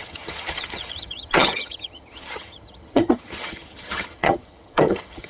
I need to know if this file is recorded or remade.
remade